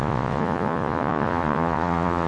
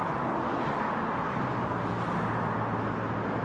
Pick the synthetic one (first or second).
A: first